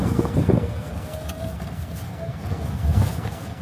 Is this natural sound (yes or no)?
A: no